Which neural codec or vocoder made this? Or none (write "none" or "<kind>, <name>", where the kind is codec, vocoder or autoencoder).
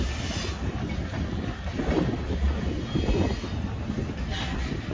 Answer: none